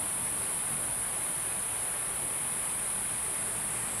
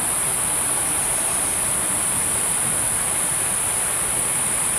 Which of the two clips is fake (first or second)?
second